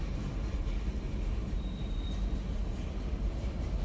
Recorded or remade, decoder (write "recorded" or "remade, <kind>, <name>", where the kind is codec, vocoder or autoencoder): recorded